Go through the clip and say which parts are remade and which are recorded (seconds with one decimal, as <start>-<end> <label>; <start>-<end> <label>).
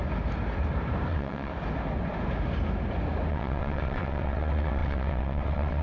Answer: 0.0-1.1 recorded; 1.1-1.5 remade; 1.5-3.3 recorded; 3.3-5.8 remade